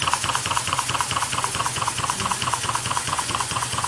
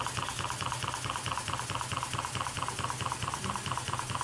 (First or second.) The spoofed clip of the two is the first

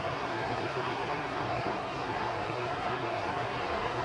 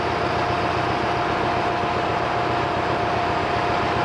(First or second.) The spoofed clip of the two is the first